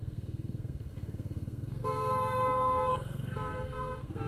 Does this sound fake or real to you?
fake